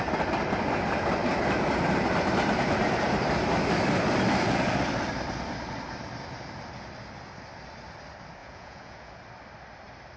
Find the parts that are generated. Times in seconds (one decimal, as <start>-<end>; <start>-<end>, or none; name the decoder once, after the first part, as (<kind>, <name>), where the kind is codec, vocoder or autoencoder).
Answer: 8.4-9.2 (vocoder, Vocos)